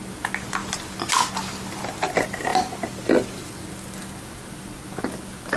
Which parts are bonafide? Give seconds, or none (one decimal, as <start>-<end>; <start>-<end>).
0.0-5.6